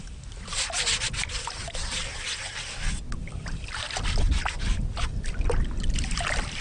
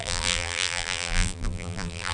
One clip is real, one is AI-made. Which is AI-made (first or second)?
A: second